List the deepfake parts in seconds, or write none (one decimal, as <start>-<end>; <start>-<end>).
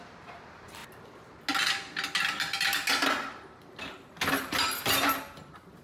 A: 0.0-0.8; 4.3-5.8